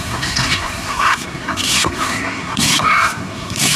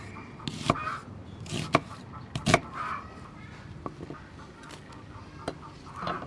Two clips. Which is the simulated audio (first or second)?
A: first